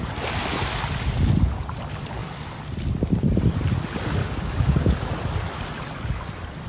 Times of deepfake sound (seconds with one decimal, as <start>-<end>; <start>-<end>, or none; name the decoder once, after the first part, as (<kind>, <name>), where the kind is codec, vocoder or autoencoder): 4.2-5.1 (codec, DAC)